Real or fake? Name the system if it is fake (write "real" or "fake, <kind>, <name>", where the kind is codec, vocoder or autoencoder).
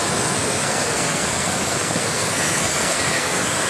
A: fake, codec, SNAC